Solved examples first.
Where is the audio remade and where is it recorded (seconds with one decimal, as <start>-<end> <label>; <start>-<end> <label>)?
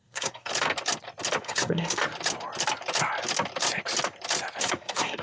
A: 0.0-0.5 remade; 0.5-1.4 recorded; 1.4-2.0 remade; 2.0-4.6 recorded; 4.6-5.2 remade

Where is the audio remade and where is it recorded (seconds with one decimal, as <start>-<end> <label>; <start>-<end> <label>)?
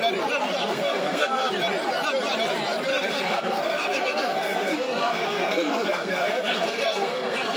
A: 0.0-0.6 recorded; 0.6-1.5 remade; 1.5-2.9 recorded; 2.9-7.6 remade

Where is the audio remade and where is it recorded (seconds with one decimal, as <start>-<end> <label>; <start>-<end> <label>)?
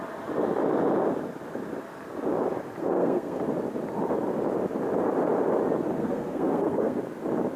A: 0.0-2.8 recorded; 2.8-3.4 remade; 3.4-6.0 recorded; 6.0-7.0 remade; 7.0-7.6 recorded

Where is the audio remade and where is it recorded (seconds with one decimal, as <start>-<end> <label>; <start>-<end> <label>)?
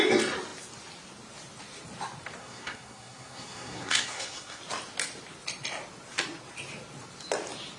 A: 0.0-2.4 recorded; 2.4-4.6 remade; 4.6-7.8 recorded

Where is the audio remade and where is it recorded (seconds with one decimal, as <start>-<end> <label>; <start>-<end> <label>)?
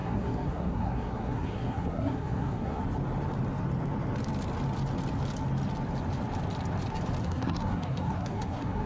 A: 0.0-2.8 remade; 2.8-7.2 recorded; 7.2-8.9 remade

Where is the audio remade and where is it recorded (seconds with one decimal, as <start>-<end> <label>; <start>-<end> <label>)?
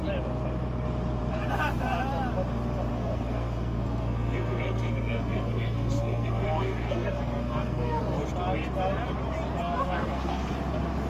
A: 0.0-2.9 recorded; 2.9-8.0 remade; 8.0-9.6 recorded; 9.6-10.5 remade; 10.5-11.1 recorded